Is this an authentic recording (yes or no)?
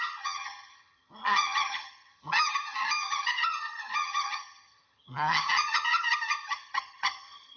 no